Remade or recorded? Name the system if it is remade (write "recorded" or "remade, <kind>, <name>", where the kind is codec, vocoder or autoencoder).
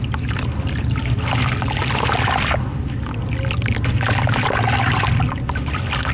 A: recorded